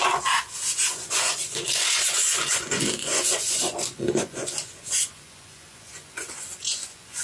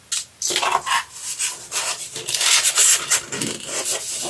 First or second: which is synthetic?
first